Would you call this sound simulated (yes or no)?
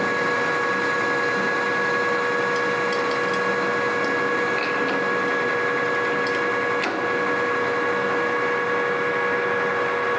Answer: no